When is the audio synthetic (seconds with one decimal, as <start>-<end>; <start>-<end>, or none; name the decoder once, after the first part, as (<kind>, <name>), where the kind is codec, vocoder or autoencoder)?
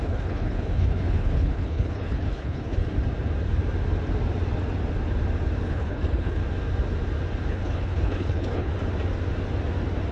0.0-2.8 (codec, HILCodec); 5.7-6.4; 7.5-8.7